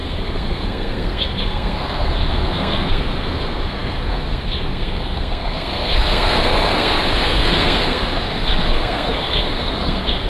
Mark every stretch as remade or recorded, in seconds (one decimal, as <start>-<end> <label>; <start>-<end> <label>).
0.0-10.3 remade